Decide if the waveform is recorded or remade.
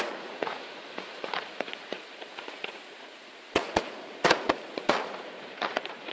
remade